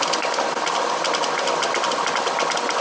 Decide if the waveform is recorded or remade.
recorded